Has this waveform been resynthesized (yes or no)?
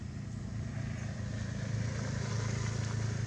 no